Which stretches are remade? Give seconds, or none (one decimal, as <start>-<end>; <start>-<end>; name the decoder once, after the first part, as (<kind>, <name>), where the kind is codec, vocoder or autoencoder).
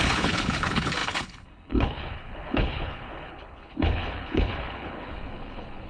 0.0-5.9 (codec, HILCodec)